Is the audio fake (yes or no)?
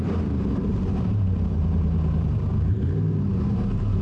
yes